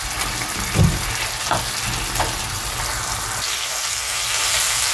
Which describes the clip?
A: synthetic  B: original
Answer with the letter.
B